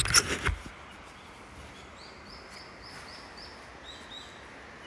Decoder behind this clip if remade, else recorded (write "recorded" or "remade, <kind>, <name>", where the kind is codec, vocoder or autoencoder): recorded